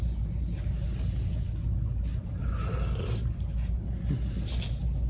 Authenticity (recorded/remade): recorded